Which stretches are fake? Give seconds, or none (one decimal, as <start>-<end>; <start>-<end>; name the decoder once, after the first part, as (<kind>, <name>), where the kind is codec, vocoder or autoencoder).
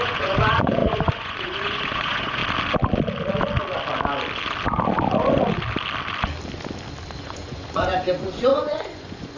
0.0-2.4 (vocoder, Vocos); 7.2-9.4